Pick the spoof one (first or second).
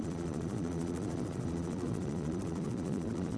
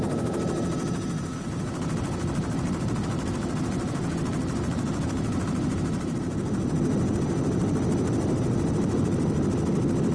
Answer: first